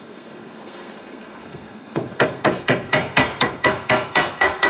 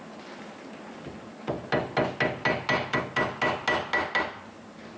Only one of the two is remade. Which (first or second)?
first